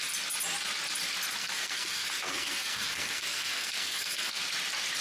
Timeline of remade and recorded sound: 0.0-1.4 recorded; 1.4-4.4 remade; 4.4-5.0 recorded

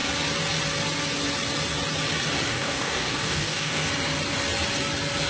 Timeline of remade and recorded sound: 0.0-2.5 recorded; 2.5-3.9 remade; 3.9-5.3 recorded

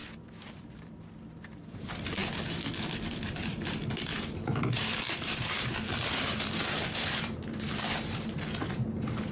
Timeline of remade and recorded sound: 0.0-9.3 remade

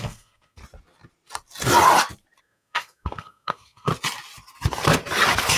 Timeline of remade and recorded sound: 0.0-0.6 remade; 0.6-2.4 recorded; 2.4-3.9 remade; 3.9-5.6 recorded

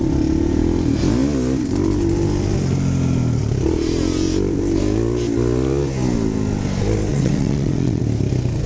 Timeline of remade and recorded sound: 0.0-7.1 recorded; 7.1-8.0 remade; 8.0-8.7 recorded

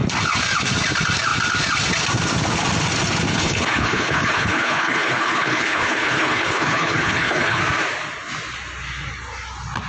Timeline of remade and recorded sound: 0.0-3.3 recorded; 3.3-7.6 remade; 7.6-9.9 recorded

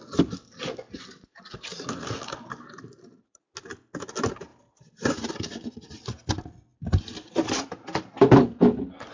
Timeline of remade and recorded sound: 0.0-1.7 recorded; 1.7-3.4 remade; 3.4-4.5 recorded; 4.5-5.3 remade; 5.3-6.7 recorded; 6.7-8.4 remade; 8.4-9.1 recorded

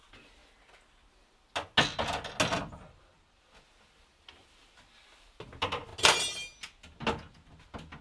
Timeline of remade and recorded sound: 0.0-8.0 recorded